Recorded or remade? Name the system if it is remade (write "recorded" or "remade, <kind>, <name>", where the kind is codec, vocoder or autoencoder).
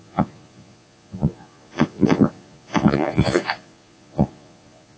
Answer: remade, vocoder, Vocos